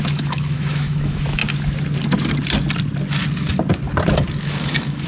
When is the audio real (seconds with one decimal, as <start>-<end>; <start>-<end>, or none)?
1.4-4.5